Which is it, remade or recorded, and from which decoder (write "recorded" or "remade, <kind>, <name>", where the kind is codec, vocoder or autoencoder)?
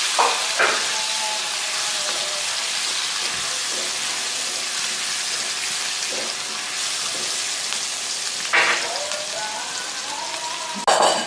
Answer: recorded